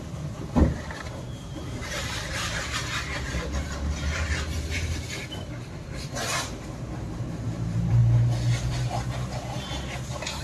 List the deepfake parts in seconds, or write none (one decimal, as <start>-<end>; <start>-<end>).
0.0-8.0